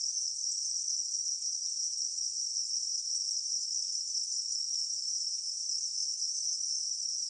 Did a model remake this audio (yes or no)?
no